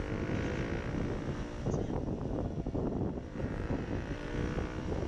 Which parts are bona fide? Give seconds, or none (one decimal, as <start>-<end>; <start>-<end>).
0.0-3.4; 4.3-5.1